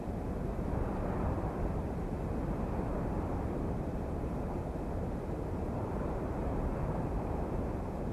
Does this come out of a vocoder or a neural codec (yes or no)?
yes